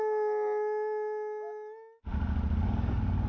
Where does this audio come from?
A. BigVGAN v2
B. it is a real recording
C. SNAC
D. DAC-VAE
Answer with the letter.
B